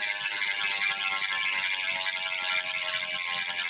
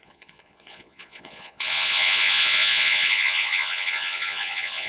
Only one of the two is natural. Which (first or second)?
first